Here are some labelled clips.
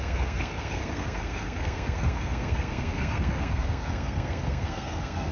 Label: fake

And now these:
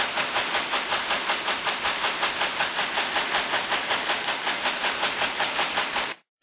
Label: real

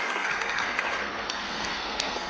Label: fake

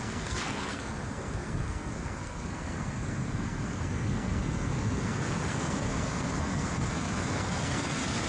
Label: fake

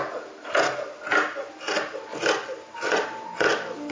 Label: real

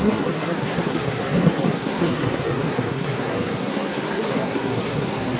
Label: fake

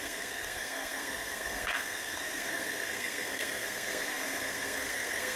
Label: fake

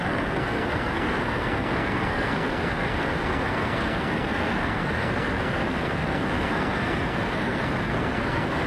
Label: fake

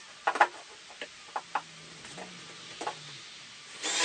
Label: real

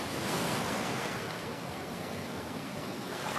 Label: fake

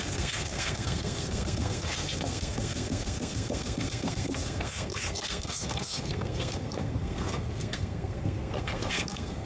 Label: fake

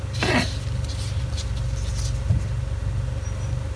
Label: real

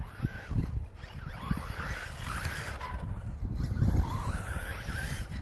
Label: real